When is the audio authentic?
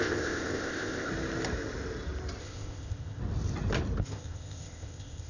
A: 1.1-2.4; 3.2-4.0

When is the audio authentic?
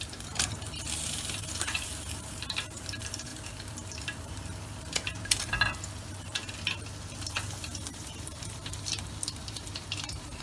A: none